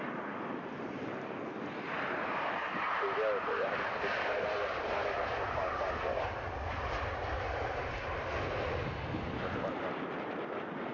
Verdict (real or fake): real